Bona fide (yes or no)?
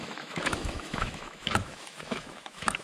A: no